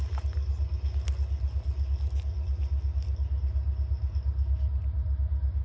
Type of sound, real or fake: real